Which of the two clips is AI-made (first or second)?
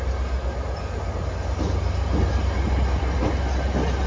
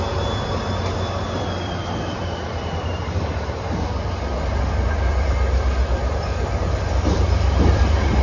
second